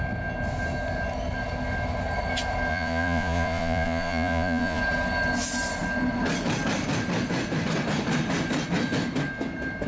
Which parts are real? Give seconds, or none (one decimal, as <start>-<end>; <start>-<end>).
0.0-2.7; 4.8-9.9